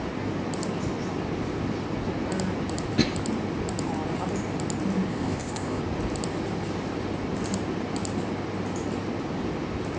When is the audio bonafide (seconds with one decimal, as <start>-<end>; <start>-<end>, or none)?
0.0-5.1; 5.8-10.0